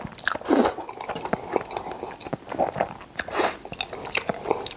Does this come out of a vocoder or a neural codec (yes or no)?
no